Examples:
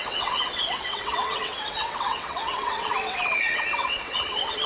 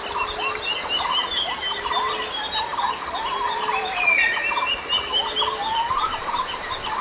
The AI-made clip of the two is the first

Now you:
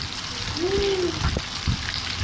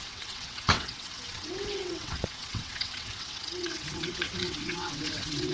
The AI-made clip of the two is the second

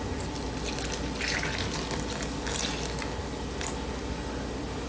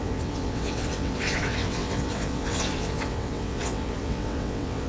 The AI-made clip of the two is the second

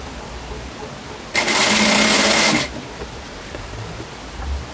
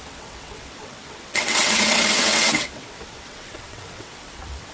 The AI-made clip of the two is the second